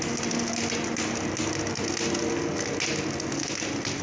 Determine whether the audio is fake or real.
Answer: real